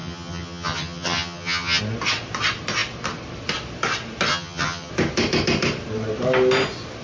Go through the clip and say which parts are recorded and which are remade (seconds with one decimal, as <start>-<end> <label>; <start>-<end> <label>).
0.0-1.8 remade; 1.8-4.3 recorded; 4.3-4.9 remade; 4.9-7.0 recorded